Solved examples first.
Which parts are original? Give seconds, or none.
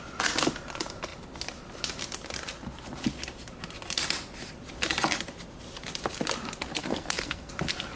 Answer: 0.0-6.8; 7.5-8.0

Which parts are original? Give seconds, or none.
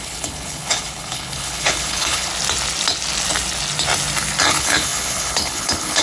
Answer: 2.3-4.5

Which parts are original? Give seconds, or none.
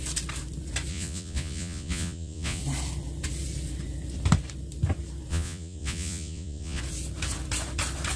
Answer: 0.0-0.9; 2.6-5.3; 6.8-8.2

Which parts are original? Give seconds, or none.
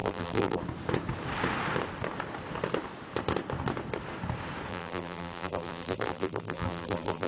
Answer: 0.6-4.7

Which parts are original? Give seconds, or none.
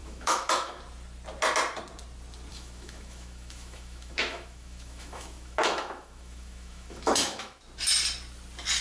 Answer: 0.8-2.5; 7.6-8.8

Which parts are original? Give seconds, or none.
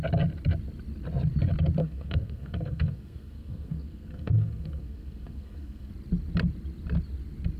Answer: 0.0-1.8; 5.9-7.6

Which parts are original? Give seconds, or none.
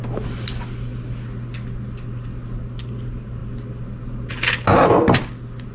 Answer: 0.0-5.7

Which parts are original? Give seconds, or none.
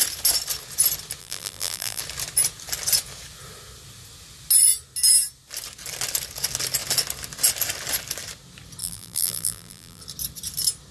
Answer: 0.0-1.2; 2.0-8.8; 10.0-10.9